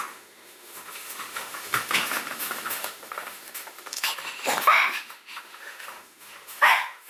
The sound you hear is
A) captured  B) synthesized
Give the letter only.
B